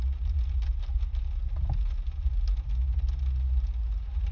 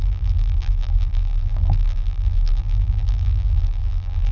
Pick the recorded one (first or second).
first